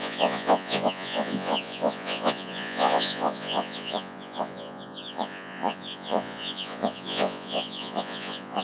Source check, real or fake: fake